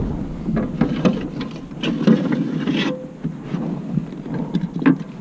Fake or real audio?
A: real